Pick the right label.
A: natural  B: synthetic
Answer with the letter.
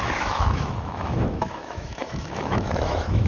B